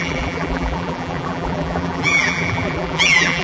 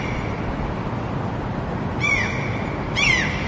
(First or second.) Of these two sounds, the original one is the second